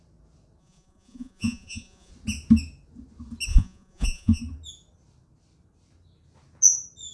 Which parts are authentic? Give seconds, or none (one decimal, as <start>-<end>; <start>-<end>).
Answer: 0.0-0.6; 2.1-3.5; 4.4-7.1